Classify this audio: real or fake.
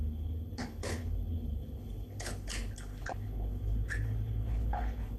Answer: fake